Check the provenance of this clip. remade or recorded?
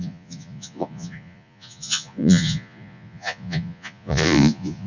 remade